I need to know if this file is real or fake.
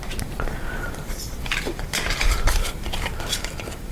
fake